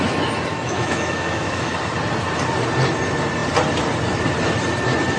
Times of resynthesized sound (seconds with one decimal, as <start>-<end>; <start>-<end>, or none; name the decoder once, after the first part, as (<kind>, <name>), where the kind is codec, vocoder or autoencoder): 0.5-1.7 (autoencoder, DAC-VAE)